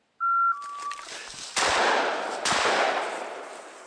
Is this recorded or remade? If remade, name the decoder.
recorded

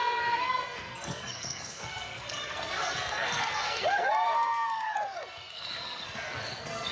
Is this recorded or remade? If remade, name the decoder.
remade, codec, SNAC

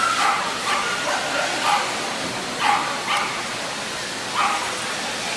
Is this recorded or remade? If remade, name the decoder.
recorded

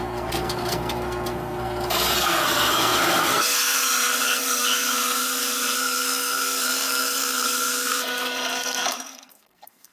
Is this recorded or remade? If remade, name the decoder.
remade, codec, SNAC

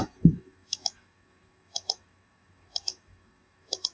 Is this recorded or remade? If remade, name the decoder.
remade, autoencoder, DAC-VAE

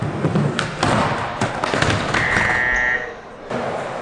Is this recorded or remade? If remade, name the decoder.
recorded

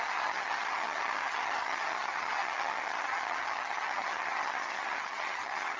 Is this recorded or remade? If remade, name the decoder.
remade, vocoder, HiFi-GAN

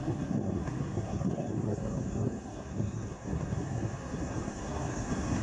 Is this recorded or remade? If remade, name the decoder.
remade, codec, SNAC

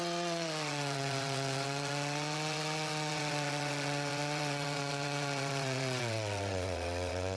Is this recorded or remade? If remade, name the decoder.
remade, vocoder, WaveNeXt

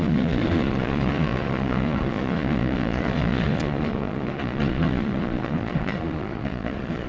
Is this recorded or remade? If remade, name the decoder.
remade, vocoder, Vocos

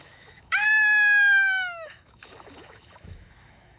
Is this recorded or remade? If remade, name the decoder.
remade, autoencoder, DAC-VAE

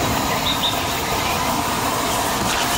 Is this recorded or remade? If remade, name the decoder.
recorded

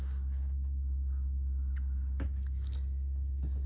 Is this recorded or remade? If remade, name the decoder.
recorded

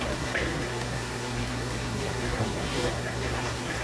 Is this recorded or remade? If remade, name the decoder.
remade, codec, SNAC